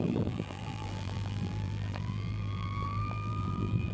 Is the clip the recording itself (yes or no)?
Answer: no